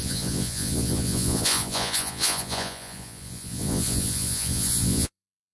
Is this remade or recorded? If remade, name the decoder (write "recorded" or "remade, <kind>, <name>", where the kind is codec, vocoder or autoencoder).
remade, vocoder, Vocos